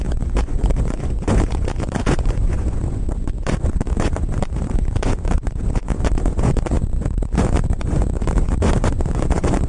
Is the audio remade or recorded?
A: remade